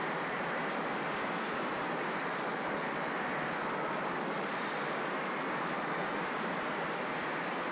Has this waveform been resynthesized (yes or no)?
no